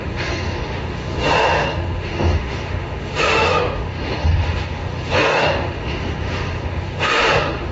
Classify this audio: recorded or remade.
remade